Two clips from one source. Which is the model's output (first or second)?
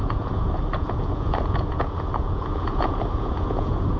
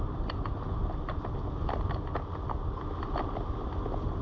first